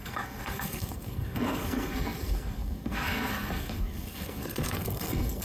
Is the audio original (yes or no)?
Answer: no